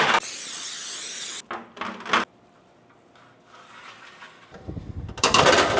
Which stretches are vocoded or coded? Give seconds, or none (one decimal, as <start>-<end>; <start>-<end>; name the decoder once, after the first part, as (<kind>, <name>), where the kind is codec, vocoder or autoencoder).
0.0-0.8 (vocoder, BigVGAN v2); 3.8-5.8